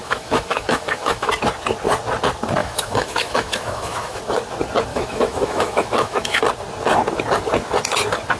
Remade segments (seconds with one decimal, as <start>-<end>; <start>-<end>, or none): 0.0-1.3; 2.6-4.2; 4.9-6.4